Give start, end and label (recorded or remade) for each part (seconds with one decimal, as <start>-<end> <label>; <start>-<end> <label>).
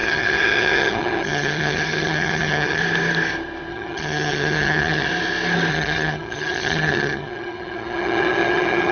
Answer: 0.0-2.8 remade; 2.8-3.7 recorded; 3.7-5.1 remade; 5.1-5.7 recorded; 5.7-8.9 remade